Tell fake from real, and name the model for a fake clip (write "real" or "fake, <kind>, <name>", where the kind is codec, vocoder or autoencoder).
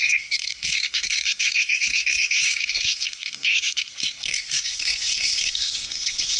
fake, codec, SNAC